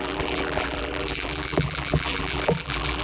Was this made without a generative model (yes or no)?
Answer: no